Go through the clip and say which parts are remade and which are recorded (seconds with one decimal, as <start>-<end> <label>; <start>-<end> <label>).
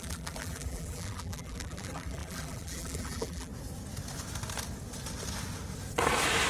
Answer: 0.0-3.5 remade; 3.5-6.5 recorded